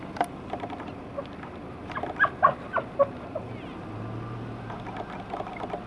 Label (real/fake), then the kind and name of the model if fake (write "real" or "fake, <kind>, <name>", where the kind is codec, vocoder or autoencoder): real